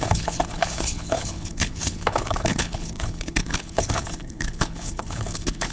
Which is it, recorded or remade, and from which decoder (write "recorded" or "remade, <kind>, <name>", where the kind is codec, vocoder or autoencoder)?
remade, codec, HILCodec